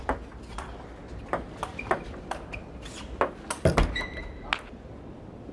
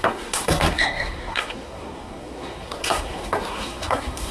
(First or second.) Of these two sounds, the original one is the first